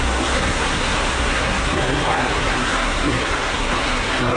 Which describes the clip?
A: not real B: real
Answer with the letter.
A